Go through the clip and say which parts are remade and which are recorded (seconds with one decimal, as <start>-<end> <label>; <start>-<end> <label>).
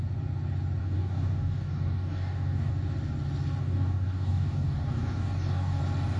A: 0.0-0.8 recorded; 0.8-2.7 remade; 2.7-3.6 recorded; 3.6-5.8 remade; 5.8-6.2 recorded